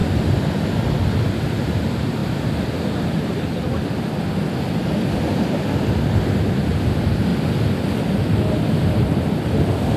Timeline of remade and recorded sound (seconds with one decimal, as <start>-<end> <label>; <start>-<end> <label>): 0.0-10.0 recorded